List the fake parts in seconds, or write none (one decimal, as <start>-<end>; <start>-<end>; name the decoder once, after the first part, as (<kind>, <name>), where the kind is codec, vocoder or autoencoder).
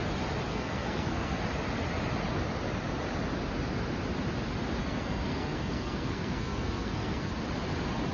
0.5-1.4 (codec, SNAC); 4.8-7.3